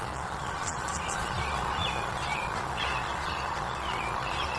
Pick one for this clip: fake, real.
fake